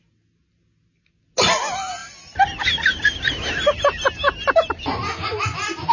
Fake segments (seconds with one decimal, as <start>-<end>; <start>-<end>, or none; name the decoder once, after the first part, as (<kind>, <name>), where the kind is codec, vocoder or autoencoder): none